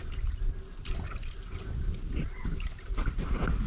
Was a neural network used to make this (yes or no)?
no